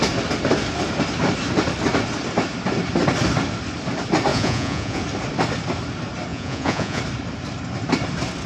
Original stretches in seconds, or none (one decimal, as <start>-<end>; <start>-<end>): 0.0-4.3; 5.0-6.3; 7.0-8.5